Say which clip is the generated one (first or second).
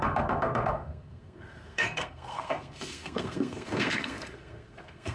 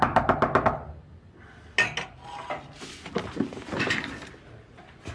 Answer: first